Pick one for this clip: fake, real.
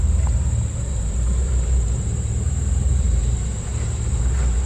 fake